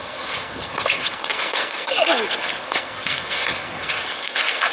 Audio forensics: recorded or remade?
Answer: remade